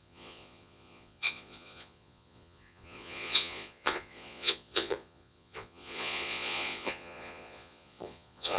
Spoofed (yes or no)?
yes